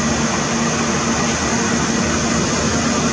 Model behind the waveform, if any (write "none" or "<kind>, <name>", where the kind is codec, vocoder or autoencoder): none